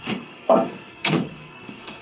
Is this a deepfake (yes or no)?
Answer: yes